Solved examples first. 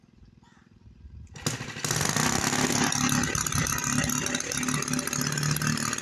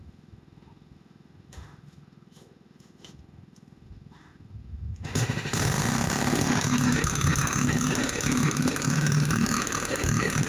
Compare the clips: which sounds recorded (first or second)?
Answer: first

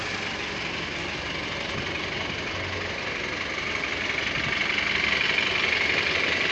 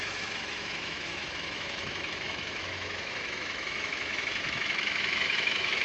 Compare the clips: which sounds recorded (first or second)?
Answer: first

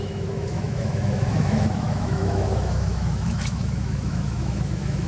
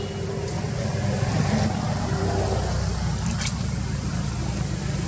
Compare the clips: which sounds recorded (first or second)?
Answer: second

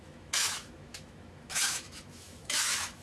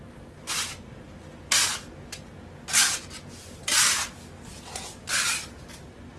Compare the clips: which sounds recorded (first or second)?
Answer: second